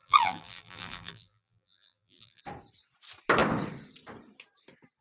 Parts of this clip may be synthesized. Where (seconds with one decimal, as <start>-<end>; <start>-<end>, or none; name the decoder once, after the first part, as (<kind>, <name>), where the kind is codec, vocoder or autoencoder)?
0.0-2.4 (vocoder, BigVGAN v2)